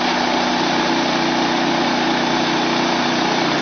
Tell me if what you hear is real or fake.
real